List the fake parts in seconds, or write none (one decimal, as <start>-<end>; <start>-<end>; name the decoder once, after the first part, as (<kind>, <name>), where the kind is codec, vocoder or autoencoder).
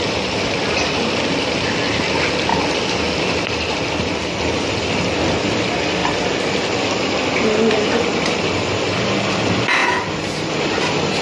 none